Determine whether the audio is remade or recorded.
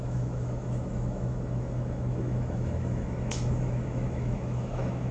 remade